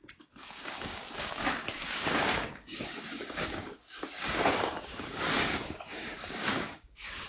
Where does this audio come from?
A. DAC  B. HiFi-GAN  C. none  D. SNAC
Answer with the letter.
A